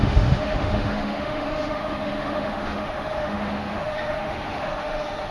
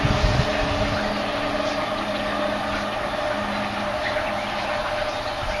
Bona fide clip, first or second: second